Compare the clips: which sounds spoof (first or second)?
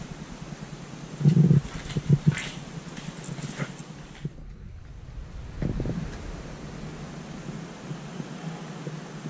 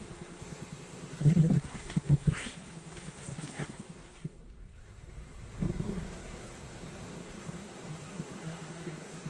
second